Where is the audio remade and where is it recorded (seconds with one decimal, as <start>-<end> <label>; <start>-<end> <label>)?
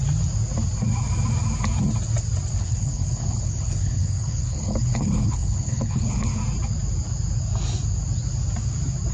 0.0-2.6 recorded; 2.6-6.4 remade; 6.4-9.1 recorded